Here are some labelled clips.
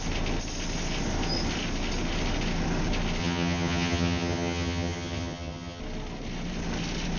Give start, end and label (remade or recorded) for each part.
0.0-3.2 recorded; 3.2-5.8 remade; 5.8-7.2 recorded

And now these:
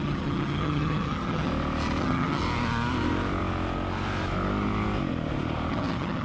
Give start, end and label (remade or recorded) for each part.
0.0-1.5 remade; 1.5-2.0 recorded; 2.0-2.4 remade; 2.4-5.7 recorded; 5.7-6.2 remade